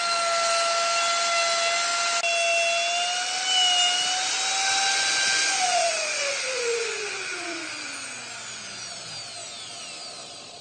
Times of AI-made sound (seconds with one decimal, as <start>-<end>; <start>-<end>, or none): 4.9-9.1